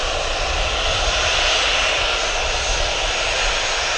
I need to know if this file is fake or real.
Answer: real